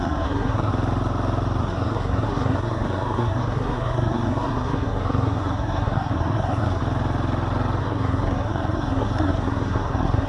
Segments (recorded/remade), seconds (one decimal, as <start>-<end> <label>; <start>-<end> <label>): 0.0-0.7 remade; 0.7-1.6 recorded; 1.6-6.8 remade; 6.8-7.8 recorded; 7.8-10.3 remade